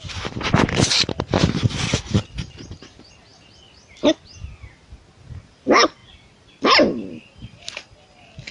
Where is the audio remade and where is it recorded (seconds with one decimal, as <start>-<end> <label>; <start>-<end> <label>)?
0.0-8.5 recorded